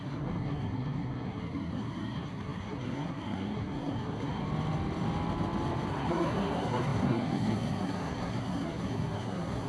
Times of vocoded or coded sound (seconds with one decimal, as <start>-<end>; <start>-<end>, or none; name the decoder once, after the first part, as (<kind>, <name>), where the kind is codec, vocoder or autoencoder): 0.0-4.4 (codec, SNAC); 5.9-9.7